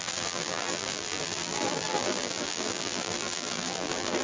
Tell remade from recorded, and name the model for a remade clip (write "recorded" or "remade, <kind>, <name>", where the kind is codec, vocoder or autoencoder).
remade, vocoder, BigVGAN v2